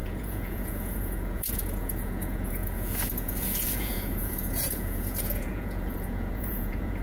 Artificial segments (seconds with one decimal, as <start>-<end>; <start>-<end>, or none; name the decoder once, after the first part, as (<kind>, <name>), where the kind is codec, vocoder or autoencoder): 0.0-7.0 (vocoder, Vocos)